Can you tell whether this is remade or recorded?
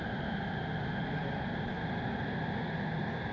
recorded